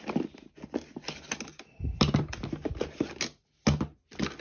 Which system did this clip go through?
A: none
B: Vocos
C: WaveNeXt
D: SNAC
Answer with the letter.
A